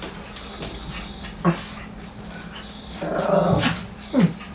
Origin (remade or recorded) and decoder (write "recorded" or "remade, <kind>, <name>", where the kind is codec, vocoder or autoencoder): recorded